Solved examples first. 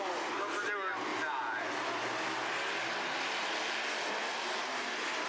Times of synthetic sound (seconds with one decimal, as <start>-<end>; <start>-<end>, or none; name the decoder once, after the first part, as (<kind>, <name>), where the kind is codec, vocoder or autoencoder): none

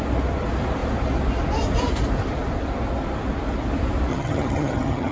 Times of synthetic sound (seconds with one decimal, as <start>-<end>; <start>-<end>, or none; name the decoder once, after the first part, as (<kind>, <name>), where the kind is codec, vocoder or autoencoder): 4.1-5.1 (vocoder, HiFi-GAN)

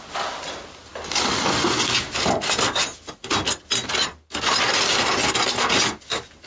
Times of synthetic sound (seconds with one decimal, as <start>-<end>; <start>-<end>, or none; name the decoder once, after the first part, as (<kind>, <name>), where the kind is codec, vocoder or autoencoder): none

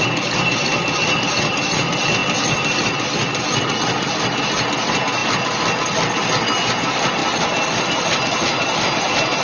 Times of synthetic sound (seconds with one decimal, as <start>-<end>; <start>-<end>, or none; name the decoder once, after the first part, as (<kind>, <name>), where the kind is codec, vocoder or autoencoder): none